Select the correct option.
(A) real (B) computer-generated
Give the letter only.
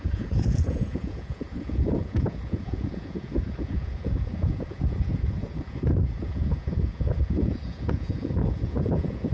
B